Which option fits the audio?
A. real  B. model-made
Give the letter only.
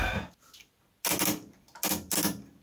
A